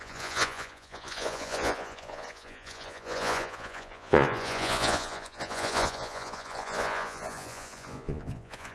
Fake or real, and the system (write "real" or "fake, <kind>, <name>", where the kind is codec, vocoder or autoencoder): fake, vocoder, Vocos